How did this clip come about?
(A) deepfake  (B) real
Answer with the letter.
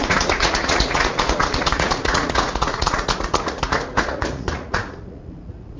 A